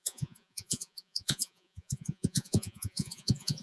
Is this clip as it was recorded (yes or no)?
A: no